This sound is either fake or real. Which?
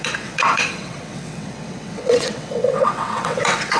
fake